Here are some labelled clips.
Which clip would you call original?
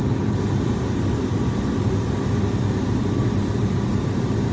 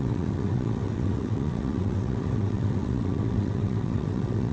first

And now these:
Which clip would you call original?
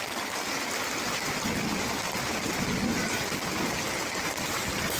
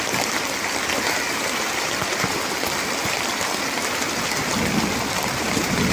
first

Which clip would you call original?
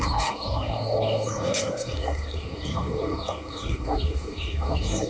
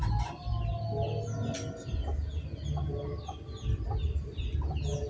second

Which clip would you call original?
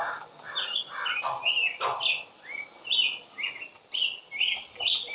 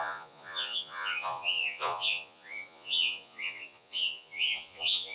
first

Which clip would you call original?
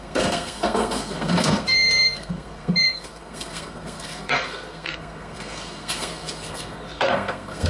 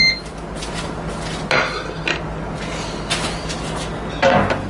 second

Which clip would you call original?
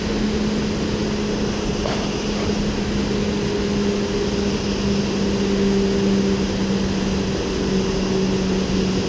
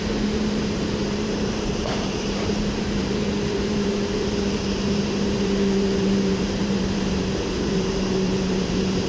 first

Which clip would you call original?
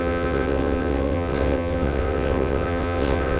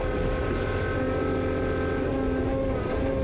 second